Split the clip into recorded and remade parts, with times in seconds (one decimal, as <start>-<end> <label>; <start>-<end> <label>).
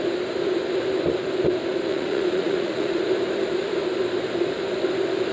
0.0-1.9 recorded; 1.9-3.0 remade; 3.0-5.3 recorded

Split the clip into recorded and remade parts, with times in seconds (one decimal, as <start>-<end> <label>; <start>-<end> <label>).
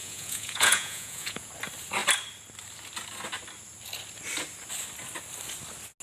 0.0-1.5 remade; 1.5-6.0 recorded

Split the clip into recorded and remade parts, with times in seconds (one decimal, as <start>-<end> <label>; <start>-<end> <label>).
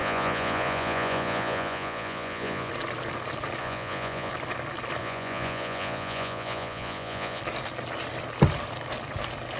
0.0-2.7 remade; 2.7-3.6 recorded; 3.6-4.3 remade; 4.3-5.0 recorded; 5.0-7.4 remade; 7.4-9.6 recorded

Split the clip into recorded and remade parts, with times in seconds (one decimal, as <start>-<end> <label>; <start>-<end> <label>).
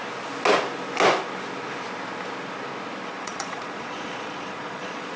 0.0-3.1 recorded; 3.1-5.2 remade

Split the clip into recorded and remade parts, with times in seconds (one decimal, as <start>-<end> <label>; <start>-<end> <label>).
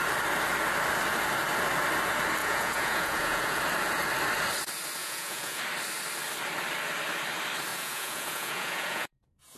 0.0-2.4 recorded; 2.4-3.6 remade; 3.6-5.0 recorded; 5.0-5.6 remade; 5.6-7.7 recorded; 7.7-9.6 remade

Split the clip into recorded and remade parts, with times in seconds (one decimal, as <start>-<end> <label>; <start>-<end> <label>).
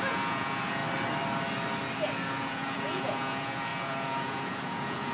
0.0-0.8 remade; 0.8-2.3 recorded; 2.3-5.1 remade